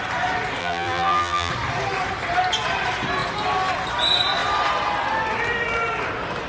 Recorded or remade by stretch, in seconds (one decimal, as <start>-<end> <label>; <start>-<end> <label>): 0.0-0.6 recorded; 0.6-1.5 remade; 1.5-6.5 recorded